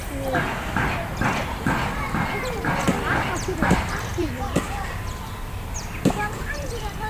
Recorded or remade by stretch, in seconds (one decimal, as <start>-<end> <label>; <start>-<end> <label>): 0.0-1.1 recorded; 1.1-7.1 remade